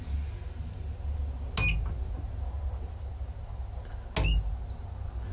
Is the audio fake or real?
real